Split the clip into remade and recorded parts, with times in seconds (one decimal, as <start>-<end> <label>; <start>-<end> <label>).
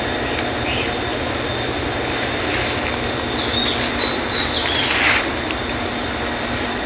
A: 0.0-6.9 recorded